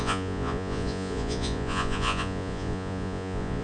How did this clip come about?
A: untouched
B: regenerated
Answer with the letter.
B